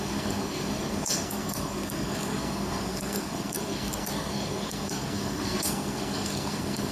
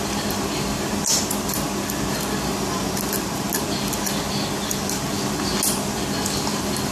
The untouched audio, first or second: second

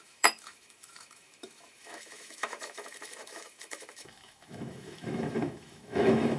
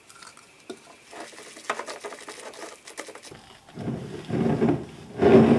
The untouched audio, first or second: second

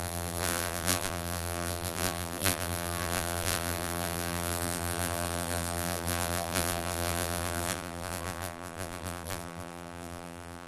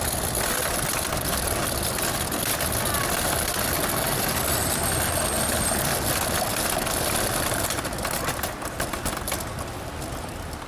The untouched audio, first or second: second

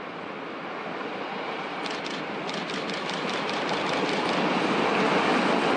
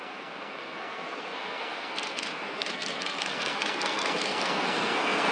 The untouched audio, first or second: first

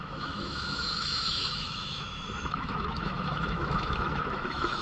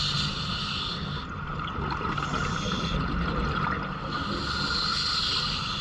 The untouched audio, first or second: second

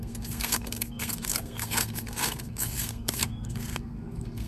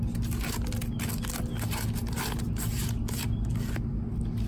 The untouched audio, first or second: second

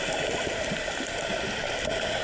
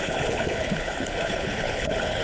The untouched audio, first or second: first